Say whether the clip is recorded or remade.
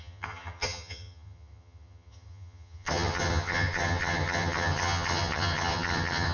remade